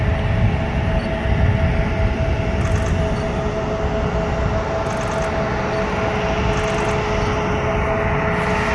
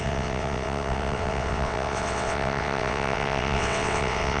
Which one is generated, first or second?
second